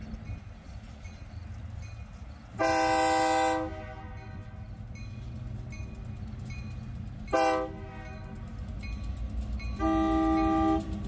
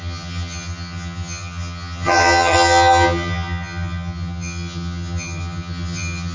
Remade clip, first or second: second